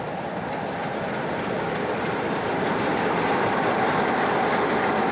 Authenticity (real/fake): real